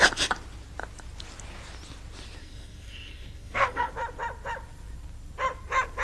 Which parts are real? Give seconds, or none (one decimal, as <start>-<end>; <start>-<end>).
0.0-2.4; 3.9-6.0